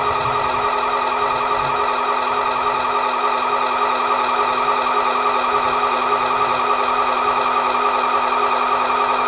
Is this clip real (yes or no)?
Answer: yes